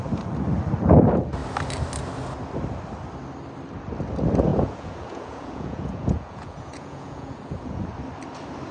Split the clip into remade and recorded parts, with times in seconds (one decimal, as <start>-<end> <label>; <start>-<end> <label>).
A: 0.0-4.5 recorded; 4.5-7.9 remade; 7.9-8.7 recorded